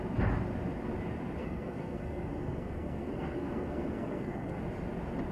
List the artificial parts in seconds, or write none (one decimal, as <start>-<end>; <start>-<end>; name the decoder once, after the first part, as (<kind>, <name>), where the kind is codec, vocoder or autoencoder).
1.4-4.6 (codec, SNAC)